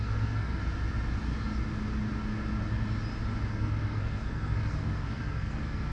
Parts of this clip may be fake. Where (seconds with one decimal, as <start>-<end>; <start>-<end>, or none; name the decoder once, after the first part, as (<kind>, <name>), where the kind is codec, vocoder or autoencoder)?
0.0-0.6 (codec, SNAC); 3.5-5.9